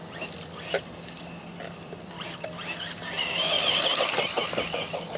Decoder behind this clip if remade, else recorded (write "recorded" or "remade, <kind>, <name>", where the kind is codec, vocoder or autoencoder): recorded